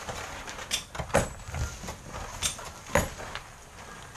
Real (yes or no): yes